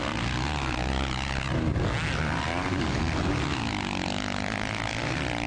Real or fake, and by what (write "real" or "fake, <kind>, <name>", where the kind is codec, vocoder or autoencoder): real